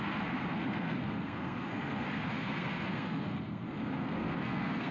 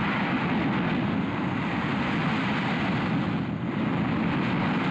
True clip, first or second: second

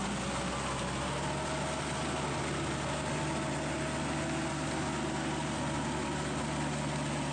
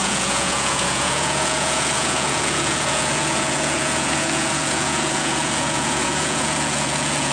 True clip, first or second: first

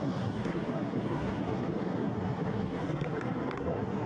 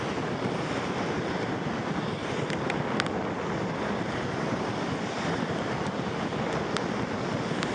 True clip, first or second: second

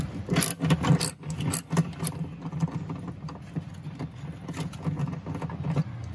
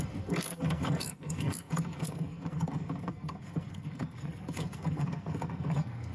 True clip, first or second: first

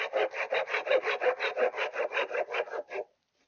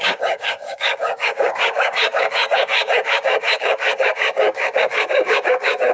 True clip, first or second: first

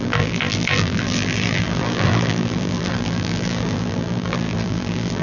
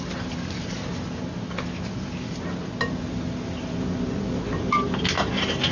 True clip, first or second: second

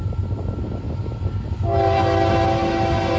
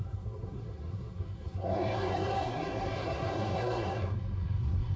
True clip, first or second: first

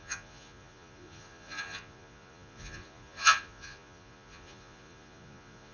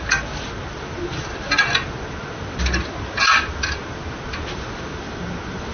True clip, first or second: second